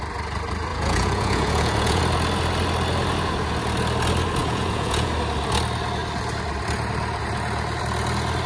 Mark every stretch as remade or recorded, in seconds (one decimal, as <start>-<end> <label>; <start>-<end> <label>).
0.0-0.7 recorded; 0.7-2.0 remade; 2.0-4.4 recorded; 4.4-5.1 remade; 5.1-8.5 recorded